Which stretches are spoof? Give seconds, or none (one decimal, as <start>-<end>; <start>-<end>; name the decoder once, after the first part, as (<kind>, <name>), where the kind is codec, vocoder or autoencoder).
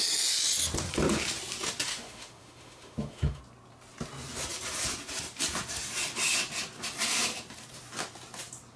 1.9-3.4 (autoencoder, DAC-VAE)